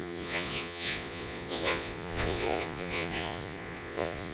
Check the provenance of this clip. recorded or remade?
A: remade